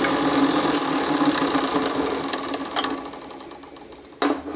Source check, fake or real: real